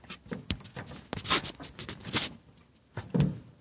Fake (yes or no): no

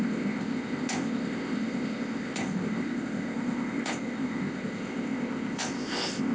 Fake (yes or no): yes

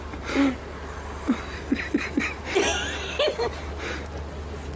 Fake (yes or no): no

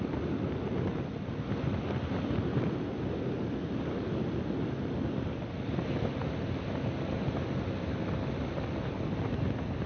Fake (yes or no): no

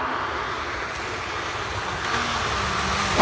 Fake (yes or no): no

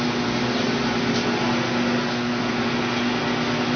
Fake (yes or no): no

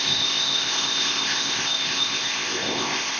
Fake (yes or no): yes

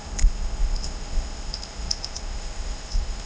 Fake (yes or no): yes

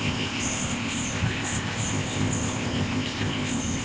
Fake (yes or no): yes